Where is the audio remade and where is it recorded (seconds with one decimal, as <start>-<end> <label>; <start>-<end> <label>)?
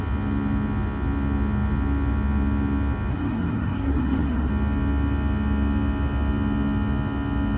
0.0-3.1 recorded; 3.1-4.5 remade; 4.5-7.6 recorded